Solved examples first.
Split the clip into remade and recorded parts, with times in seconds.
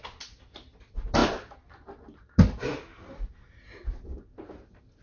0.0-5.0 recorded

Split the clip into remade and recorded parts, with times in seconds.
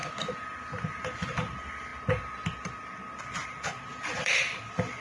0.0-0.8 recorded; 0.8-1.9 remade; 1.9-3.3 recorded; 3.3-5.0 remade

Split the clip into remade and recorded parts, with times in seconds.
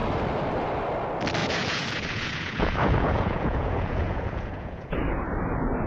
0.0-1.4 recorded; 1.4-4.9 remade; 4.9-5.9 recorded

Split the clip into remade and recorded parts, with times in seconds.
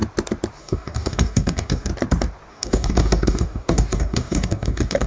0.0-0.6 recorded; 0.6-1.9 remade; 1.9-2.5 recorded; 2.5-5.1 remade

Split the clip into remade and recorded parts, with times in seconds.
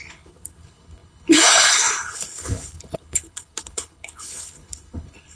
0.0-5.4 remade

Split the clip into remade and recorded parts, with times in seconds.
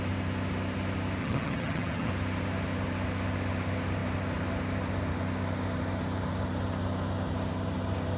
0.0-1.2 recorded; 1.2-2.1 remade; 2.1-8.2 recorded